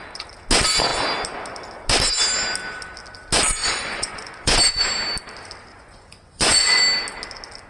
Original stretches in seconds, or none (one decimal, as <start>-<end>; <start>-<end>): 0.0-3.6; 4.6-5.7; 6.8-7.7